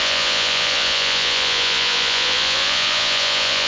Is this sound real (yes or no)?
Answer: no